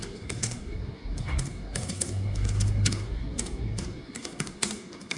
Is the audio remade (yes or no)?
yes